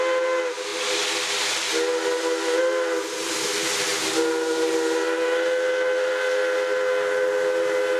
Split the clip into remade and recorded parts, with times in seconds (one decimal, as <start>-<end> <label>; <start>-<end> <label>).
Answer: 0.0-8.0 recorded